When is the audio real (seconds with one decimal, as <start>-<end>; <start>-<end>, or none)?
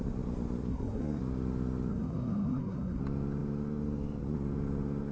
0.0-0.7; 1.2-1.9; 3.0-5.1